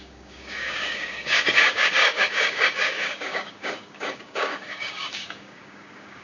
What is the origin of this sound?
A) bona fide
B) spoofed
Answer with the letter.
B